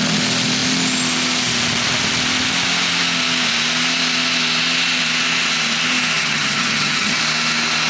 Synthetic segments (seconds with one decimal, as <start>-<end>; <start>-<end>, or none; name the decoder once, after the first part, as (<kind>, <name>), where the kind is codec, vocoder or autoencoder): 6.2-7.2 (vocoder, HiFi-GAN)